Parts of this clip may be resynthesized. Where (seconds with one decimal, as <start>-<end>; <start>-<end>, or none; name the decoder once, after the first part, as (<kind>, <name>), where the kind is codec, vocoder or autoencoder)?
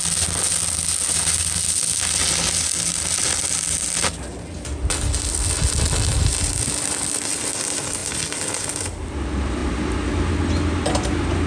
none